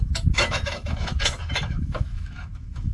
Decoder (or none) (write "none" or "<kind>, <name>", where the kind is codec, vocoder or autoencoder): autoencoder, DAC-VAE